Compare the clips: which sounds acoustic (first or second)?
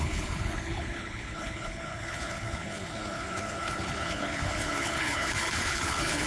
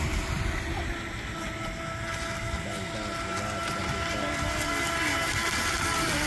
second